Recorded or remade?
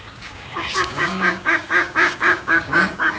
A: remade